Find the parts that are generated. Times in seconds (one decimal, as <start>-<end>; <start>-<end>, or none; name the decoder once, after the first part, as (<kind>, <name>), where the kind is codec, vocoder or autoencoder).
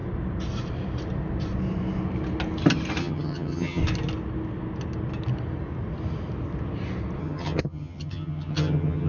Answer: 3.0-3.8 (vocoder, HiFi-GAN); 7.2-9.1